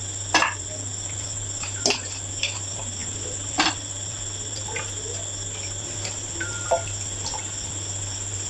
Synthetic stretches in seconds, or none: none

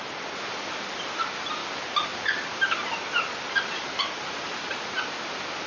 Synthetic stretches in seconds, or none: none

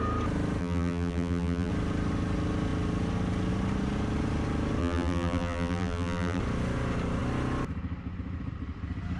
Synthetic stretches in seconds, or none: 0.6-1.7 (vocoder, BigVGAN v2); 4.8-6.4

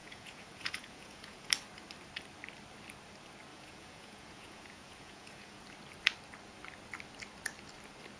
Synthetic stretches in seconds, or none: 0.0-1.5 (vocoder, Vocos); 3.5-5.6

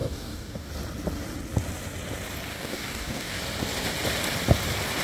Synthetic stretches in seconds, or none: 0.0-0.7 (codec, DAC); 2.5-3.4